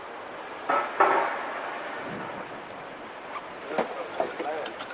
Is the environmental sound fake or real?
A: real